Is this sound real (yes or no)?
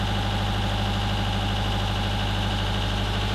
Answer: yes